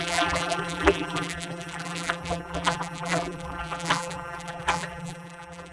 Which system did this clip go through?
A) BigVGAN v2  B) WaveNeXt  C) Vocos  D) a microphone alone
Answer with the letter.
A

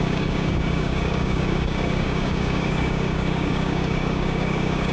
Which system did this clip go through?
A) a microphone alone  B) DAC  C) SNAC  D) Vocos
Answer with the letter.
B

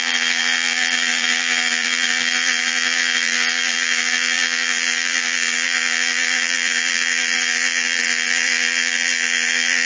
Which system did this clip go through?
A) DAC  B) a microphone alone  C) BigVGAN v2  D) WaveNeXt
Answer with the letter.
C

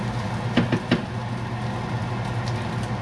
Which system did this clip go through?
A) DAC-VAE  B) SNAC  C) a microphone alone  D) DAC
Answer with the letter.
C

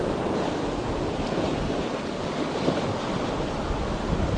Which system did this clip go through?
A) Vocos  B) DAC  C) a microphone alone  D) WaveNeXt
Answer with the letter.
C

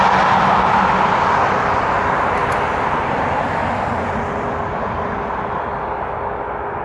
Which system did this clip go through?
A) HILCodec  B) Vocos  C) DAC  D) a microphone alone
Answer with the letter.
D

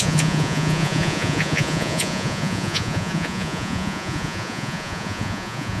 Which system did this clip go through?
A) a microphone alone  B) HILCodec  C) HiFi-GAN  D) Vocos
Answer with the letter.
D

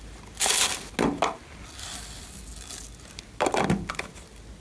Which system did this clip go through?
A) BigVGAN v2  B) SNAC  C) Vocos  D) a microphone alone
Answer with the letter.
D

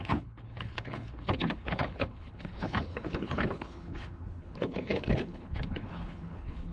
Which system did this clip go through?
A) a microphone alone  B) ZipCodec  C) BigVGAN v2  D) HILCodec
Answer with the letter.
D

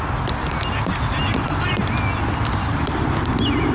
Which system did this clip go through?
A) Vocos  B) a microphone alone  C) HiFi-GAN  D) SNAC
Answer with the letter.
B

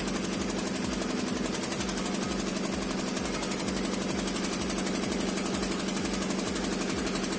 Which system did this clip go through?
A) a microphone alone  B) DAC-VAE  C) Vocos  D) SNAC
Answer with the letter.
A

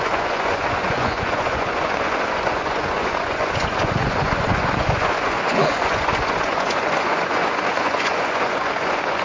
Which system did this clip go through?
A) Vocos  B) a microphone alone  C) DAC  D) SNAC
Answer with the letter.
A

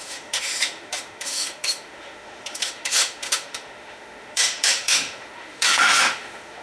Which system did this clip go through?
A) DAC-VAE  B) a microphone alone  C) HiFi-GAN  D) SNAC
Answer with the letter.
A